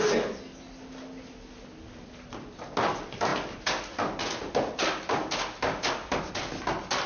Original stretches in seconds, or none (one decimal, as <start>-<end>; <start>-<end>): 0.0-7.1